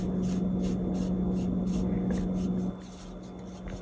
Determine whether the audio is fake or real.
real